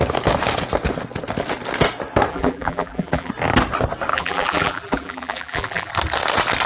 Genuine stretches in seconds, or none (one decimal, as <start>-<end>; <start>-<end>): 0.0-2.3; 3.3-4.1; 5.9-6.7